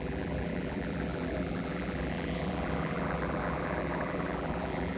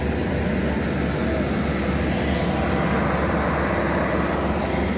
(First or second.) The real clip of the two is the second